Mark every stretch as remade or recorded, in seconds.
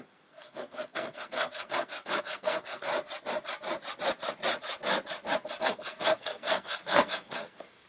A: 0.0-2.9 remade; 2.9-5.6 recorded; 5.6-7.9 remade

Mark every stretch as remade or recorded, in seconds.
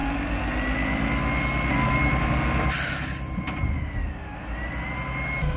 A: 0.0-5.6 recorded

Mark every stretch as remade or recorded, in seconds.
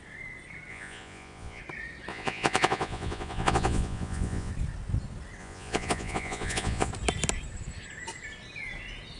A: 0.0-0.7 recorded; 0.7-1.6 remade; 1.6-2.1 recorded; 2.1-4.5 remade; 4.5-5.4 recorded; 5.4-6.9 remade; 6.9-9.2 recorded